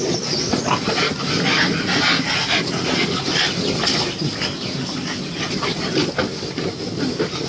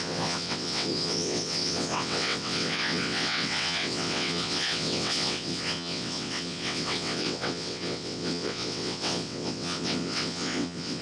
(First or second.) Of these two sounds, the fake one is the second